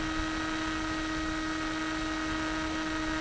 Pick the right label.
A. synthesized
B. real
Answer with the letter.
B